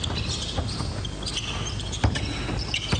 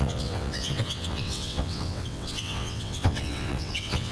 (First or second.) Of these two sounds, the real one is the first